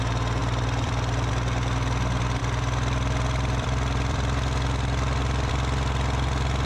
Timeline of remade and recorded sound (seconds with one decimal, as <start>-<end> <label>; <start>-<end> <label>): 0.0-0.4 recorded; 0.4-1.3 remade; 1.3-2.4 recorded; 2.4-5.5 remade; 5.5-6.7 recorded